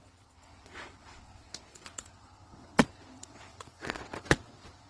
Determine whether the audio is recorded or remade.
remade